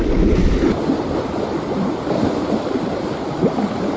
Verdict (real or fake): real